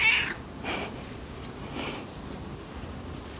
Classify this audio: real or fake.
real